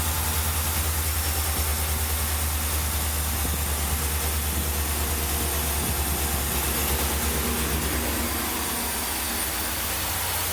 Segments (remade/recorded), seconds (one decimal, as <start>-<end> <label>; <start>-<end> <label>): 0.0-10.5 recorded